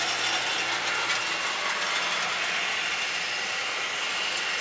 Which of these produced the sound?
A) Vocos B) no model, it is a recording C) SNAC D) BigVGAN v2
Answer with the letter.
B